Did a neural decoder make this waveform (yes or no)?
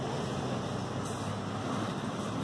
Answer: no